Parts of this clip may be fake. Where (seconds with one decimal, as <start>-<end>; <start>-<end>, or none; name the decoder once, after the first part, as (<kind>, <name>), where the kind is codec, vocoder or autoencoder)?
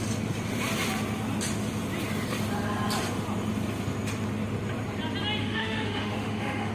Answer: 5.4-6.7 (autoencoder, DAC-VAE)